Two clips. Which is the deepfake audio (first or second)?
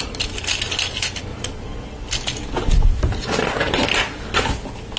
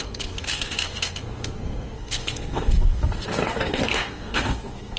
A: second